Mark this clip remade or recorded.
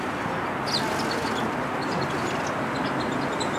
recorded